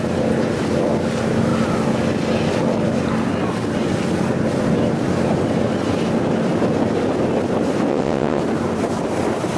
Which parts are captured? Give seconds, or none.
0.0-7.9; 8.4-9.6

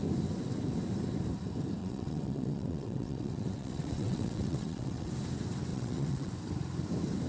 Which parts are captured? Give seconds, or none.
0.0-1.8; 5.1-5.7; 6.3-7.3

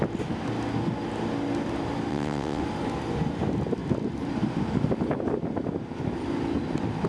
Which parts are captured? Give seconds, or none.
0.0-2.1; 2.6-7.1

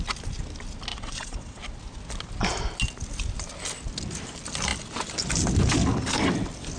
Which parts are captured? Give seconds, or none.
0.0-0.9; 1.6-6.8

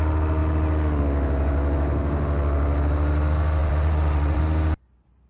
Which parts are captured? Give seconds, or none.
0.0-3.6; 4.4-5.3